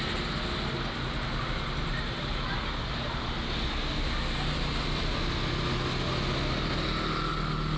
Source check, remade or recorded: recorded